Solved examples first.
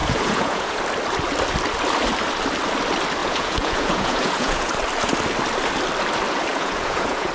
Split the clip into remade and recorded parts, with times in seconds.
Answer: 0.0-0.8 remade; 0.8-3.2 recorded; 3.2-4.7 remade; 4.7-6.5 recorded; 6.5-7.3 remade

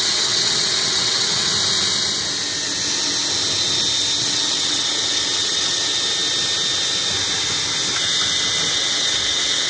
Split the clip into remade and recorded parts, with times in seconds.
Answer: 0.0-1.5 remade; 1.5-4.2 recorded; 4.2-5.9 remade; 5.9-8.7 recorded; 8.7-9.7 remade

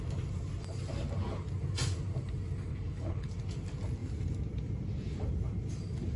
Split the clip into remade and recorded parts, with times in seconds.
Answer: 0.0-2.7 recorded; 2.7-3.3 remade; 3.3-6.2 recorded

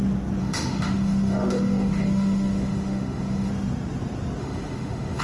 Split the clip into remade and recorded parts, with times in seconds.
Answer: 0.0-0.4 recorded; 0.4-3.5 remade; 3.5-4.4 recorded; 4.4-5.2 remade